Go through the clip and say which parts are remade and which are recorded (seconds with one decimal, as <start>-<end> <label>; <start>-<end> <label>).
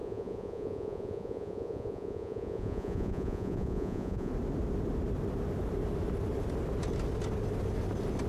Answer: 0.0-4.3 remade; 4.3-8.3 recorded